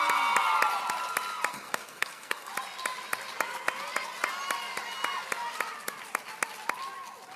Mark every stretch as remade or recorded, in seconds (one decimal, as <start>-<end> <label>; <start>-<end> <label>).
0.0-1.5 recorded; 1.5-2.5 remade; 2.5-7.4 recorded